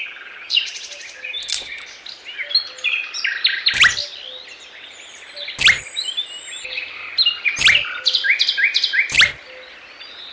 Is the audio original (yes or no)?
yes